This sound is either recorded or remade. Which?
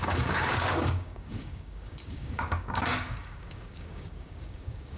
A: remade